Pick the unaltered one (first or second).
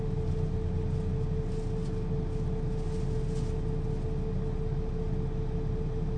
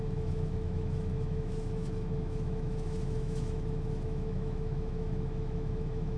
first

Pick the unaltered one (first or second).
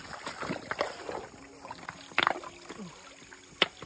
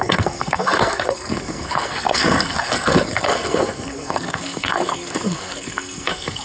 first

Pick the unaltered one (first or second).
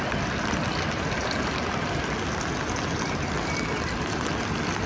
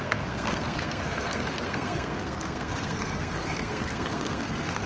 first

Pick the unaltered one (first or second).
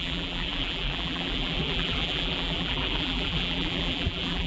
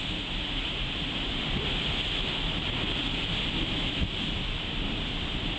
second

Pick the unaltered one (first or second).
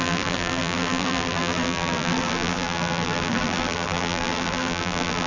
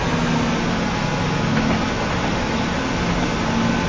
second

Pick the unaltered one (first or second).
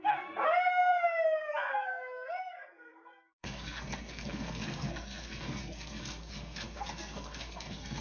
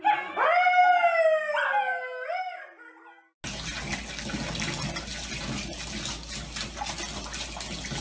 second